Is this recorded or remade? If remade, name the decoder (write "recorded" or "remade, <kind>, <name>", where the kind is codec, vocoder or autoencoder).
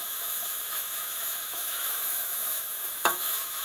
remade, autoencoder, DAC-VAE